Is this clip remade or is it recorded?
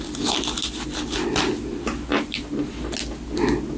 recorded